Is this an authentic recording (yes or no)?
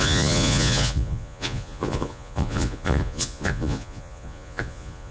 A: no